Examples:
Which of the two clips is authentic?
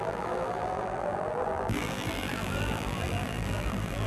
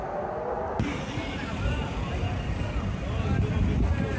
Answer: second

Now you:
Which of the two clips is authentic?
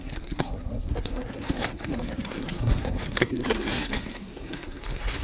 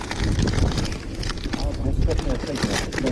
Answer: second